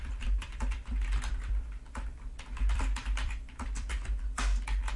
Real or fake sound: fake